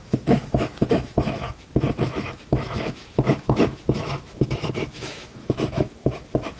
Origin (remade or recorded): remade